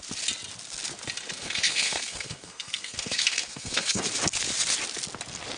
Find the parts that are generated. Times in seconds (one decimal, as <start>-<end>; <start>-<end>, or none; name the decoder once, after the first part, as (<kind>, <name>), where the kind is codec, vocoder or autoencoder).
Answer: 1.3-4.0 (codec, SNAC)